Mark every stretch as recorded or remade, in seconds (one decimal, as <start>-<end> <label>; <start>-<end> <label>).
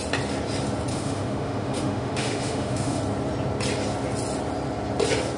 0.0-0.9 recorded; 0.9-3.0 remade; 3.0-5.4 recorded